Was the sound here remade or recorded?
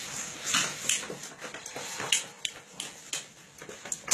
recorded